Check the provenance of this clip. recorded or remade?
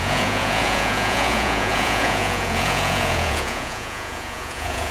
remade